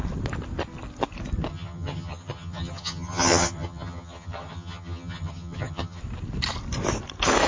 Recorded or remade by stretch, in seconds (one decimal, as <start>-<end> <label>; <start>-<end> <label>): 0.0-1.5 recorded; 1.5-6.0 remade; 6.0-7.5 recorded